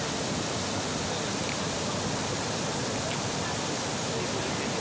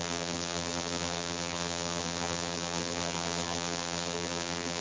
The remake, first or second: second